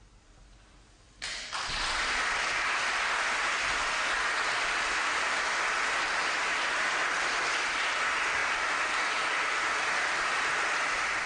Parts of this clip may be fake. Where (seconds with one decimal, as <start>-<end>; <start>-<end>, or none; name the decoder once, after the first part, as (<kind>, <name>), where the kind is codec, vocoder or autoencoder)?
none